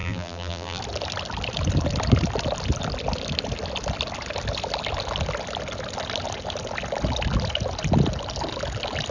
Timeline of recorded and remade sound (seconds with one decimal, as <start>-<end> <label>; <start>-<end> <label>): 0.0-0.8 remade; 0.8-9.1 recorded